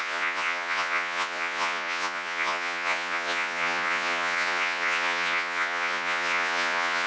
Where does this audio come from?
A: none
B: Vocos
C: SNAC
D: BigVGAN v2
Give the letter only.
B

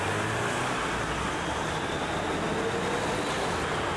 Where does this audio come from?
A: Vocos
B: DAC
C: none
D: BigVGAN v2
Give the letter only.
C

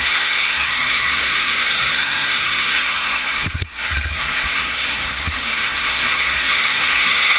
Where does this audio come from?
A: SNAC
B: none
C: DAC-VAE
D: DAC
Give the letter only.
A